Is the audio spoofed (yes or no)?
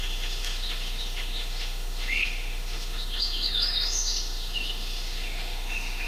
yes